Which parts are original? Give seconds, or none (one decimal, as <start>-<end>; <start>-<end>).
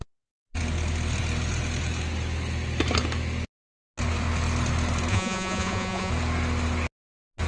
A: 0.0-5.1; 6.1-7.5